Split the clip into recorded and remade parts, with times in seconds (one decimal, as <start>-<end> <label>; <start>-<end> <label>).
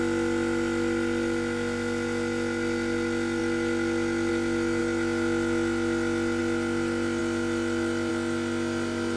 0.0-9.2 recorded